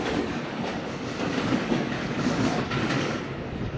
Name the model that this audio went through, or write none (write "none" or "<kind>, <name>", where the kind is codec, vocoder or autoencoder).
codec, DAC